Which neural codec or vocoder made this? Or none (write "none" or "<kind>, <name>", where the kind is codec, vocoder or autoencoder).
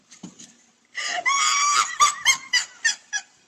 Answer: vocoder, BigVGAN v2